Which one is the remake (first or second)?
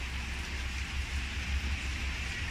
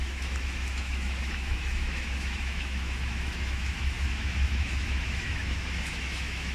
second